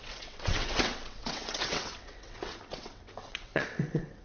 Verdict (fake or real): fake